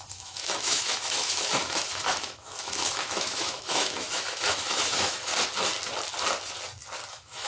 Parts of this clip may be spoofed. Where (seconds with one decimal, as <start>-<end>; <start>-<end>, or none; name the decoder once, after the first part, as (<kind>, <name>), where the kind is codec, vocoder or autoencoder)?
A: 0.0-5.3 (autoencoder, DAC-VAE); 7.1-7.5